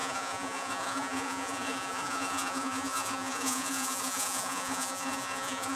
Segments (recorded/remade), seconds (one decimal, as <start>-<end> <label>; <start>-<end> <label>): 0.0-5.8 remade